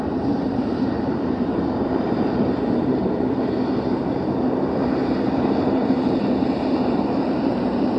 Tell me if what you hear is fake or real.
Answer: fake